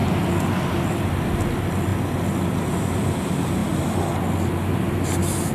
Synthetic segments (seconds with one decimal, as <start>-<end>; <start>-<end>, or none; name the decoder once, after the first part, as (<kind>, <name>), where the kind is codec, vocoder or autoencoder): none